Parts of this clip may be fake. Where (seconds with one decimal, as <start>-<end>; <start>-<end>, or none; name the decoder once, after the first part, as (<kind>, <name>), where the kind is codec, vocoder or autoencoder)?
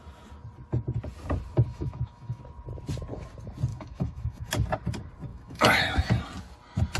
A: 1.7-2.4 (autoencoder, DAC-VAE); 3.7-4.5; 5.3-5.8